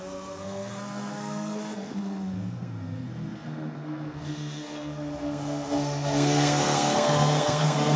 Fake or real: fake